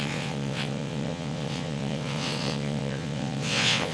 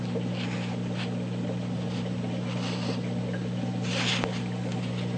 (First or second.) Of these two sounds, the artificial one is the first